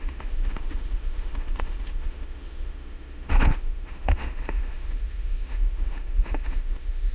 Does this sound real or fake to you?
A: fake